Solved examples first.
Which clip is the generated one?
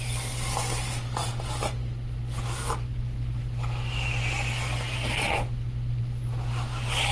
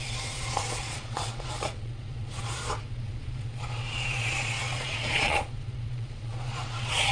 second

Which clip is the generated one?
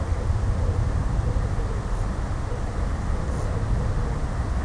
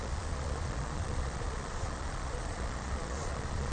second